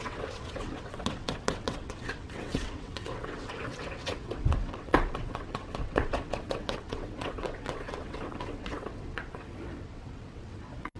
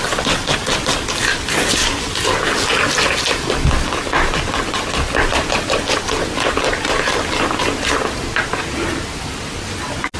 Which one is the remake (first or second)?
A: first